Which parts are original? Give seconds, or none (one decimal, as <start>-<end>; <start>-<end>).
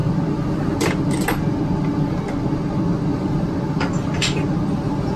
0.0-3.1; 3.9-5.2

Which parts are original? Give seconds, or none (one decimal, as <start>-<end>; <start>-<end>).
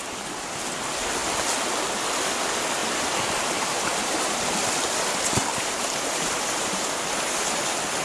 0.0-2.8; 4.4-5.5; 7.6-8.0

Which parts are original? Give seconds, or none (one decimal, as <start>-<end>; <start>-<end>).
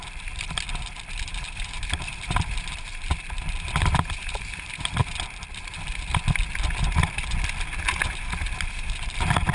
0.0-9.5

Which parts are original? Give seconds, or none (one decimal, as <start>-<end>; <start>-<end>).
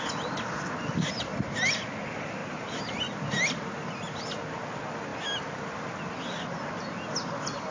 0.0-2.4; 4.2-7.7